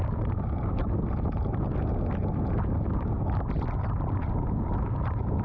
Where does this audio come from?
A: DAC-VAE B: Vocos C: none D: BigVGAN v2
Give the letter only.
C